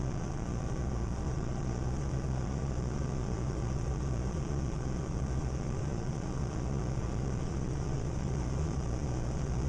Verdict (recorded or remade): remade